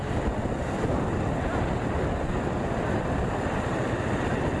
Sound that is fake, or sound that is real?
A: real